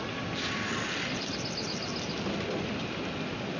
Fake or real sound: real